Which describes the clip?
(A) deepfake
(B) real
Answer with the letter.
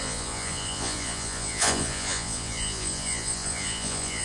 A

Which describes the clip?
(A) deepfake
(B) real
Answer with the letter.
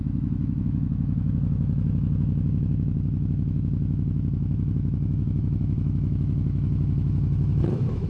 A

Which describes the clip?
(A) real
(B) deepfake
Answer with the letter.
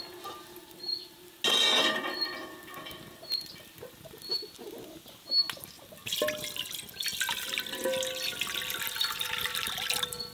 A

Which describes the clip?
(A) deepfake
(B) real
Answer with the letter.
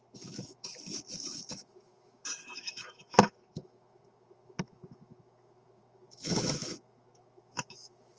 A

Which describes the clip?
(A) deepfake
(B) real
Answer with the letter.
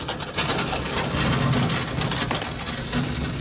B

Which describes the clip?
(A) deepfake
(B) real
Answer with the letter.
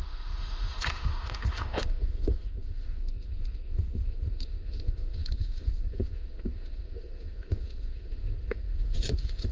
A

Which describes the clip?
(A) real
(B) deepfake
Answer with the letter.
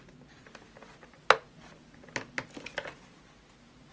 A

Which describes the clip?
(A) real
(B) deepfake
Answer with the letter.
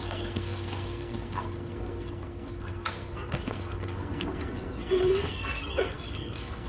B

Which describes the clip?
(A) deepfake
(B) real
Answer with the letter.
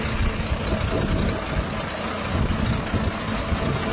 B